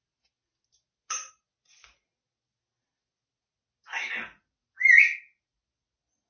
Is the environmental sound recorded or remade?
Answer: recorded